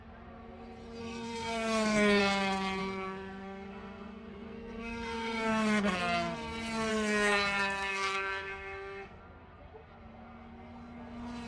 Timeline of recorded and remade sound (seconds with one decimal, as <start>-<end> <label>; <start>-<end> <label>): 0.0-1.0 recorded; 1.0-2.2 remade; 2.2-2.8 recorded; 2.8-6.0 remade; 6.0-6.9 recorded; 6.9-9.2 remade; 9.2-11.5 recorded